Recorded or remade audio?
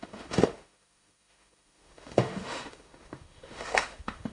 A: remade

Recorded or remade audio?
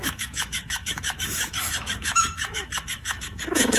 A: remade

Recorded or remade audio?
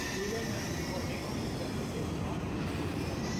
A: recorded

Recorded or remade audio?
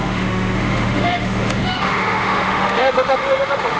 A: remade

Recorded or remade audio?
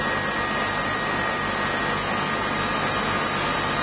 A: recorded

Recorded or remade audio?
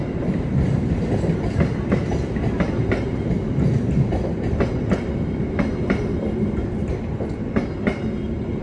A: recorded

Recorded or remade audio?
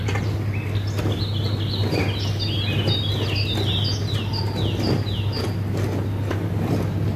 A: recorded